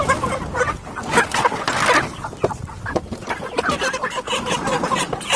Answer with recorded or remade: recorded